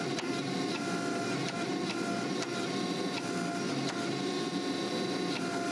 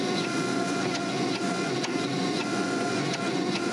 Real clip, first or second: first